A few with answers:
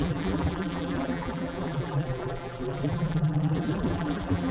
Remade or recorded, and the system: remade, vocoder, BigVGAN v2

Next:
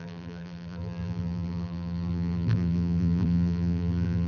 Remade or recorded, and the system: remade, vocoder, BigVGAN v2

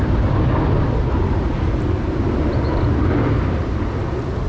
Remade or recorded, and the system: recorded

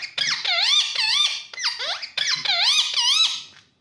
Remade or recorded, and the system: recorded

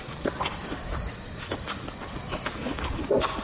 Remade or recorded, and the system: remade, vocoder, BigVGAN v2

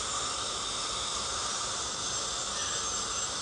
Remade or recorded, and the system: remade, vocoder, BigVGAN v2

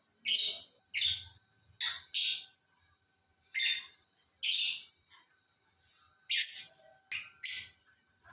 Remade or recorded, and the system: recorded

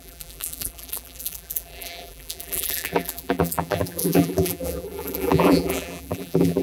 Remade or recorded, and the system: remade, vocoder, BigVGAN v2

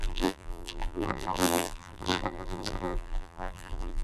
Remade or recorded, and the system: remade, vocoder, BigVGAN v2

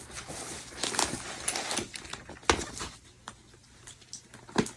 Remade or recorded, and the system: recorded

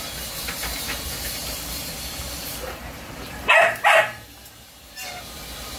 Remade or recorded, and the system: remade, vocoder, BigVGAN v2